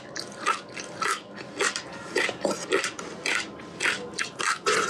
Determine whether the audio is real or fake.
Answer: real